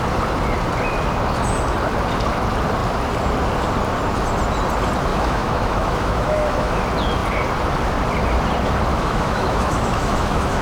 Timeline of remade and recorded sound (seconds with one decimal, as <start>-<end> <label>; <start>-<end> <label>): 0.0-5.1 recorded; 5.1-6.8 remade; 6.8-8.9 recorded; 8.9-10.6 remade